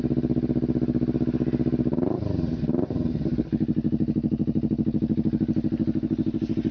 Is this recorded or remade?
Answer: recorded